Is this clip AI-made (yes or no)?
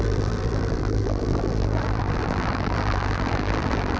yes